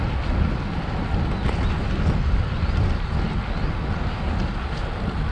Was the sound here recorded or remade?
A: recorded